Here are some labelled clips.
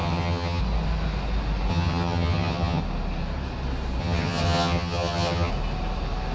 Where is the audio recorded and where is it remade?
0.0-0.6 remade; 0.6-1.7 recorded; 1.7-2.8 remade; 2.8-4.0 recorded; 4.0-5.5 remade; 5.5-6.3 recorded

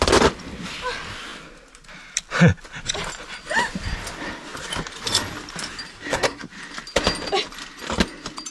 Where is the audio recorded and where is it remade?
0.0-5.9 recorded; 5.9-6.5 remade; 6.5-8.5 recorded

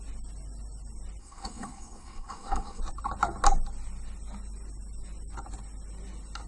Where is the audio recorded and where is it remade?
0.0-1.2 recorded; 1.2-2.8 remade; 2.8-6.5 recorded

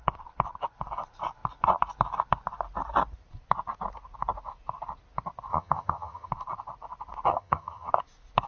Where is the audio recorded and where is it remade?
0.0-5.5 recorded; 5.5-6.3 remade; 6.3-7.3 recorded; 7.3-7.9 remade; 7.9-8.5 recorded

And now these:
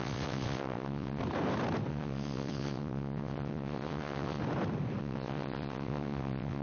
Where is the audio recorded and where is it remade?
0.0-1.2 remade; 1.2-1.9 recorded; 1.9-4.4 remade; 4.4-5.0 recorded; 5.0-6.6 remade

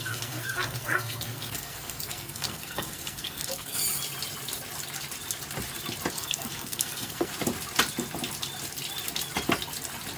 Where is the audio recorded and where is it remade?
0.0-3.8 remade; 3.8-6.1 recorded; 6.1-7.3 remade; 7.3-10.2 recorded

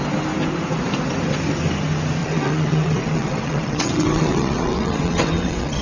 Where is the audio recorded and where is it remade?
0.0-2.2 recorded; 2.2-5.8 remade

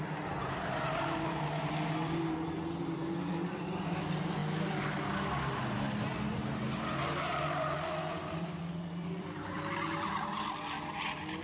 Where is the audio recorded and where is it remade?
0.0-3.3 recorded; 3.3-4.0 remade; 4.0-7.3 recorded; 7.3-9.6 remade; 9.6-11.4 recorded